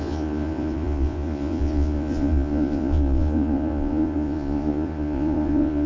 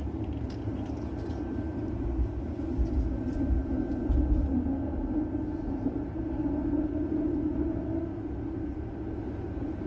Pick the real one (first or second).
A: second